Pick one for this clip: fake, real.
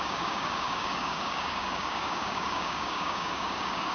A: fake